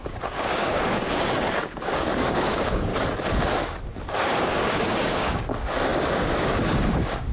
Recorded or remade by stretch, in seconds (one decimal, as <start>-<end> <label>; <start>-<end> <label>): 0.0-2.9 remade; 2.9-4.4 recorded; 4.4-7.3 remade

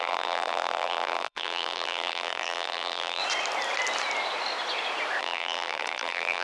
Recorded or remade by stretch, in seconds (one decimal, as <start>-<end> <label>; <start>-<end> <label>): 0.0-3.2 remade; 3.2-5.2 recorded; 5.2-6.4 remade